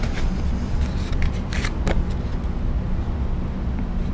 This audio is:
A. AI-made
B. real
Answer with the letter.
B